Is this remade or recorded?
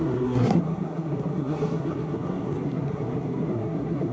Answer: remade